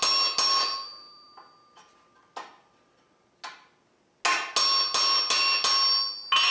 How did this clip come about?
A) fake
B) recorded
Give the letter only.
B